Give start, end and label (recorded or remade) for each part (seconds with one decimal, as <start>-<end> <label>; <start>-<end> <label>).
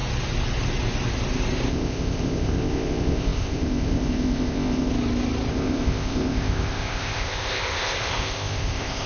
0.0-1.7 recorded; 1.7-4.9 remade; 4.9-5.5 recorded; 5.5-9.1 remade